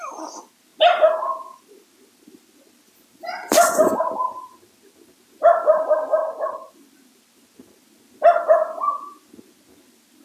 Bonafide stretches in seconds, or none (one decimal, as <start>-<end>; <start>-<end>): 0.0-6.2; 6.7-10.2